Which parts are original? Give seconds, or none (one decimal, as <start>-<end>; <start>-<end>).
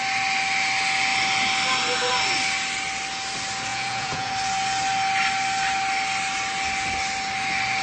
0.0-3.7; 4.3-7.8